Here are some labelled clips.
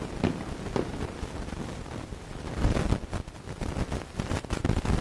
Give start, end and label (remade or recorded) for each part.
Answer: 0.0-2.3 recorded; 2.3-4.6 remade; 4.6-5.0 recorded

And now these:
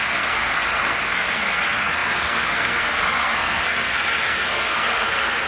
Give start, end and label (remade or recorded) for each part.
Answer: 0.0-5.5 remade

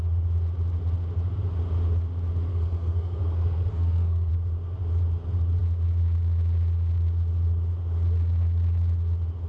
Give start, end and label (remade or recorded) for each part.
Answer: 0.0-2.5 recorded; 2.5-4.3 remade; 4.3-9.5 recorded

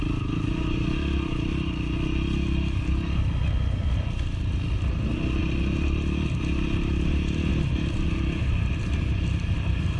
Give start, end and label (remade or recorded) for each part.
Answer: 0.0-10.0 recorded

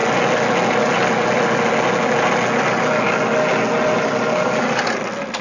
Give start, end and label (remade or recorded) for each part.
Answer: 0.0-5.4 recorded

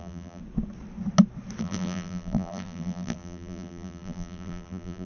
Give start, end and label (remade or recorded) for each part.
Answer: 0.0-0.4 remade; 0.4-1.6 recorded; 1.6-5.1 remade

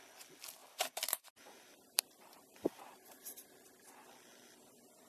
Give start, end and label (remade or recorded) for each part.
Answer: 0.0-0.6 recorded; 0.6-3.7 remade; 3.7-5.1 recorded

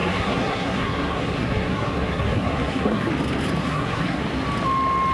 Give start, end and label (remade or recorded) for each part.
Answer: 0.0-3.1 remade; 3.1-3.6 recorded; 3.6-4.2 remade; 4.2-5.1 recorded